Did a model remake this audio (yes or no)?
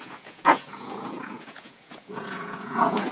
yes